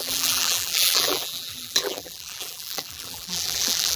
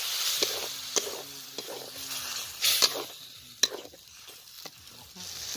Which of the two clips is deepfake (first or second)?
first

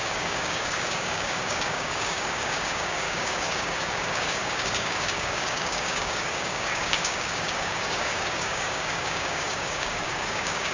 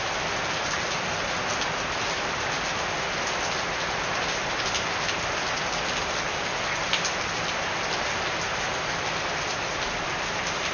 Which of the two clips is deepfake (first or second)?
first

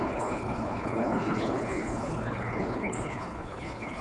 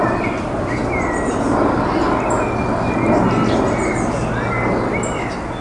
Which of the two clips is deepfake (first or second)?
first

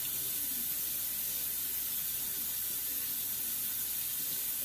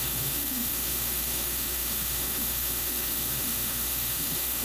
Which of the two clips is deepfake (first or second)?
second